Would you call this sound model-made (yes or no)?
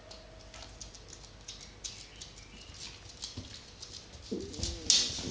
no